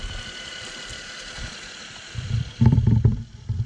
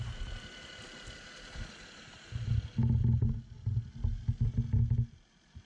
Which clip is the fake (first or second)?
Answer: first